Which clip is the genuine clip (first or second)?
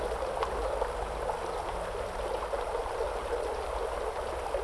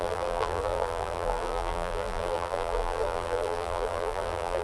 first